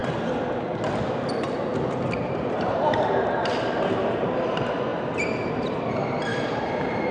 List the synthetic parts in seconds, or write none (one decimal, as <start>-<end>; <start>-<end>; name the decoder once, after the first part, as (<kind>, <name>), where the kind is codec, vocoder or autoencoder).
2.2-4.9 (vocoder, BigVGAN v2); 5.5-7.1